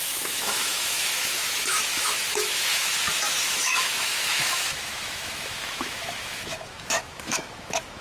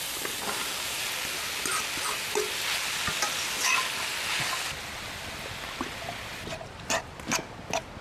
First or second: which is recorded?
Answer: second